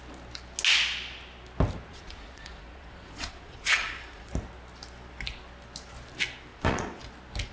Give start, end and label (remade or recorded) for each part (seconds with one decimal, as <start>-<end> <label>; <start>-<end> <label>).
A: 0.0-1.9 recorded; 1.9-4.3 remade; 4.3-6.5 recorded; 6.5-7.0 remade; 7.0-7.5 recorded